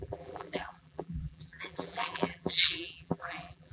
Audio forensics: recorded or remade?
remade